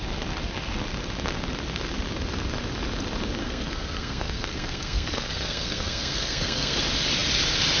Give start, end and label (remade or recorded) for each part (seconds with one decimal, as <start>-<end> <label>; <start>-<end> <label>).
0.0-3.4 recorded; 3.4-6.8 remade; 6.8-7.8 recorded